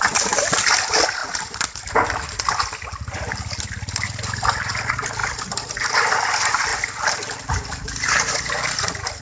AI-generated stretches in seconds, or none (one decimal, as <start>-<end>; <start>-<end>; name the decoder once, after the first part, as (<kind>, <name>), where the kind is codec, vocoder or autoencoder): 5.2-5.8 (vocoder, BigVGAN v2)